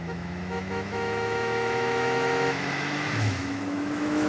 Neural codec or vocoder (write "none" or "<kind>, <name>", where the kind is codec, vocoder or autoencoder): autoencoder, DAC-VAE